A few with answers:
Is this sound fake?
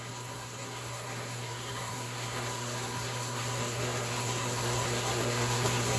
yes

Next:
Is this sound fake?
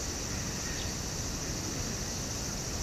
no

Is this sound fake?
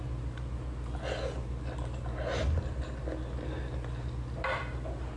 no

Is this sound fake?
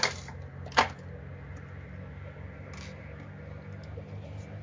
no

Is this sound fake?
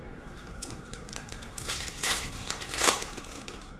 yes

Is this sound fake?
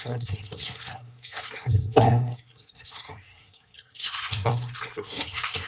yes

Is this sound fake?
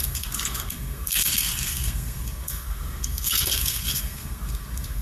yes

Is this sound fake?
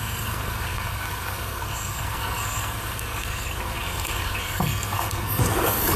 yes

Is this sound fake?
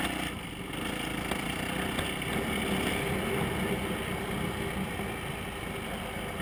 no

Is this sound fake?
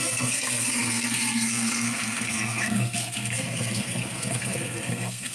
yes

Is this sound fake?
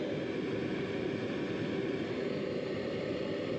no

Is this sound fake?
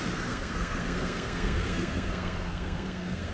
yes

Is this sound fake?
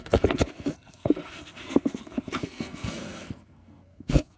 yes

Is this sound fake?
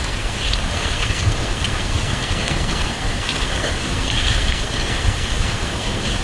yes